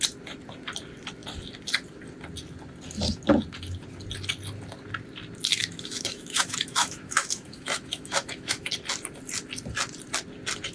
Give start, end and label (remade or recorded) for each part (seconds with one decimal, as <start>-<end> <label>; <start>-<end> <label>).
0.0-5.5 recorded; 5.5-8.7 remade; 8.7-10.7 recorded